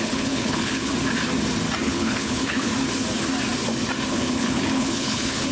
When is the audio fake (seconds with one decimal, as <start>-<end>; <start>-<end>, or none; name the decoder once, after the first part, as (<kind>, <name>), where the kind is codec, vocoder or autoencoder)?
0.0-0.9 (codec, HILCodec); 1.8-2.7; 4.1-5.5